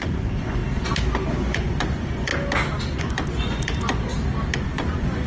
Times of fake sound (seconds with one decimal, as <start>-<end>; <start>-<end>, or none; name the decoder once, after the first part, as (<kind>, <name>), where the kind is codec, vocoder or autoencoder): 0.0-0.6 (vocoder, Vocos); 1.4-2.3; 3.0-4.1; 4.6-5.3